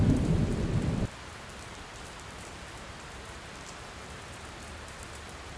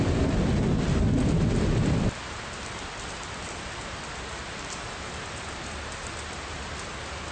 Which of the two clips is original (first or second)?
second